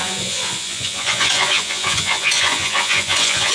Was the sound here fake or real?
fake